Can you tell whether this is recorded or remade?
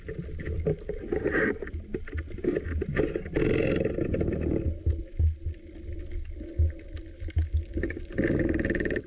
recorded